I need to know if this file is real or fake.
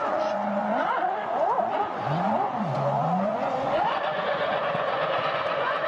fake